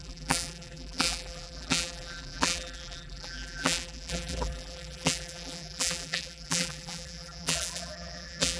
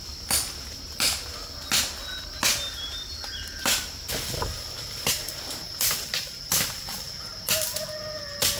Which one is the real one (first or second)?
second